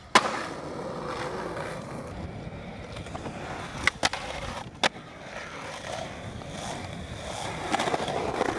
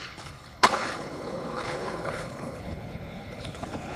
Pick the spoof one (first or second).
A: second